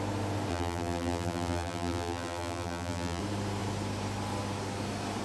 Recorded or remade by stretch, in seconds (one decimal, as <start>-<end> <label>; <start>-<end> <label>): 0.0-0.5 recorded; 0.5-3.2 remade; 3.2-5.2 recorded